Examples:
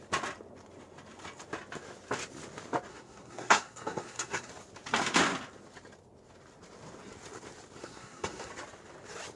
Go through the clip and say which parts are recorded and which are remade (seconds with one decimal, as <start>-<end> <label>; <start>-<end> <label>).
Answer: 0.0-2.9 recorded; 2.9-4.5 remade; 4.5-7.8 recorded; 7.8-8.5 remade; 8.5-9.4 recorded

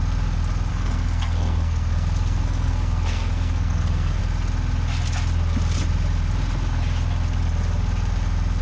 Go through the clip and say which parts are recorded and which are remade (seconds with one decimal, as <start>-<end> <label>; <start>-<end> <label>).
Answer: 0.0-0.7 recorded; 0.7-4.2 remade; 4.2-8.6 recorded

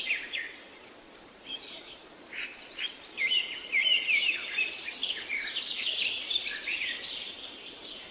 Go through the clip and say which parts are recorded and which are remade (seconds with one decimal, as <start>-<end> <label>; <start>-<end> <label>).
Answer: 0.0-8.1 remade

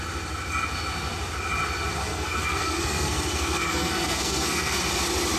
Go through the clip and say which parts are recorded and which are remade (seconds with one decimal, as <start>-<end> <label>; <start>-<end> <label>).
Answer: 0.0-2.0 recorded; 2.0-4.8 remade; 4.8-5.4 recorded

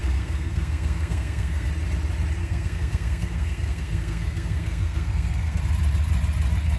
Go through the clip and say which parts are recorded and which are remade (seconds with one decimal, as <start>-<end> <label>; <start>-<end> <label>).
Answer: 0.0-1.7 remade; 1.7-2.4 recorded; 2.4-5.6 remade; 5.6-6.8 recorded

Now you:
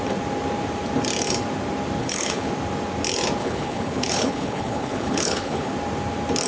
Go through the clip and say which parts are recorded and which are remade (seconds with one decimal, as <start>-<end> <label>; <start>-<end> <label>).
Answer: 0.0-2.0 recorded; 2.0-2.5 remade; 2.5-3.4 recorded; 3.4-5.7 remade; 5.7-6.5 recorded